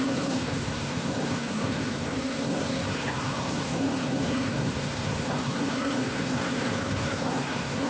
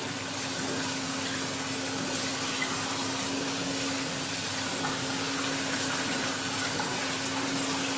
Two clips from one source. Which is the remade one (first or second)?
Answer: first